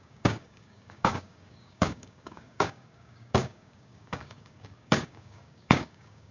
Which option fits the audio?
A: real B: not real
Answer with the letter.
B